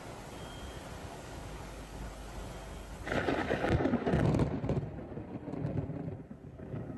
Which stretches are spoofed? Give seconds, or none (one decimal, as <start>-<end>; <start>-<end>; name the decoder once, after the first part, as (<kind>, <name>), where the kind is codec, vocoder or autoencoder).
1.0-2.0 (codec, DAC); 3.4-4.1; 6.3-7.0